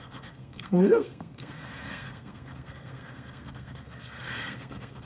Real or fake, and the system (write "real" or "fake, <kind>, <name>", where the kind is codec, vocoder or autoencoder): fake, codec, SNAC